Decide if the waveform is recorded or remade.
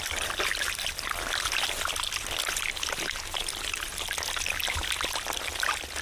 recorded